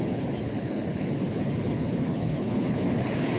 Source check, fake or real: fake